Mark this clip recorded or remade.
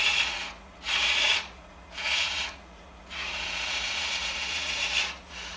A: remade